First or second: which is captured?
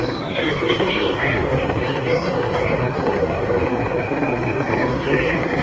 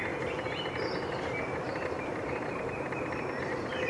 second